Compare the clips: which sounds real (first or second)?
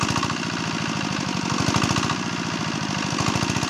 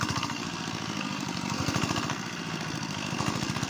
first